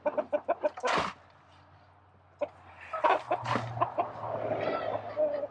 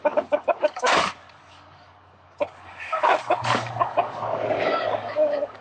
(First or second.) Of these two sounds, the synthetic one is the second